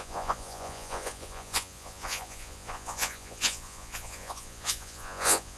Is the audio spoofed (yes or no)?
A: yes